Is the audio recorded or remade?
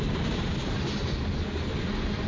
recorded